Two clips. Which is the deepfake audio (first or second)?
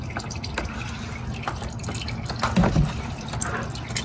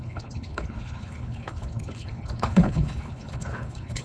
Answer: second